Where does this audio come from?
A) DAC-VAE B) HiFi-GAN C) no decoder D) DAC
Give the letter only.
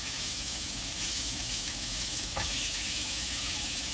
A